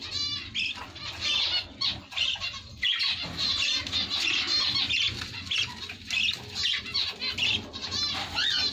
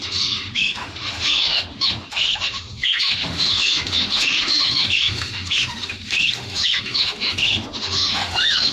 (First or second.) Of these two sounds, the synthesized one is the second